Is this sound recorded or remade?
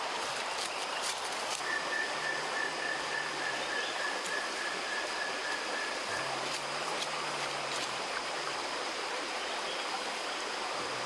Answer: recorded